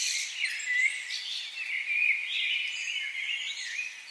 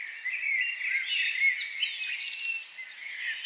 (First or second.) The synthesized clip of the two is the first